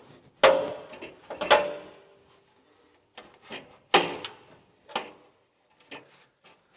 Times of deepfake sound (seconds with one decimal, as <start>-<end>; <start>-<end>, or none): none

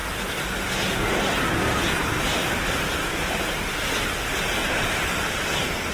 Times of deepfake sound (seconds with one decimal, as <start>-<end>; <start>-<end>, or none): 2.3-3.2; 4.6-5.9

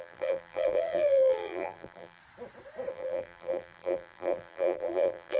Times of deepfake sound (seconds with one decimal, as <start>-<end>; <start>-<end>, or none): 0.0-2.2; 2.9-5.4

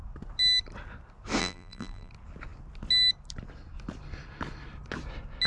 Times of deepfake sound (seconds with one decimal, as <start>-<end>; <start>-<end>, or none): 1.4-2.1

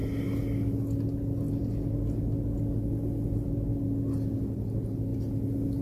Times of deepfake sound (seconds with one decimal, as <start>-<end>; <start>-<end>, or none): none

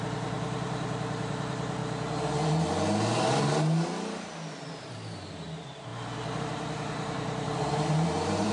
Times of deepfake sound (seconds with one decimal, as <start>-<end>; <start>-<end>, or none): 0.0-1.8; 4.7-5.9; 6.4-8.5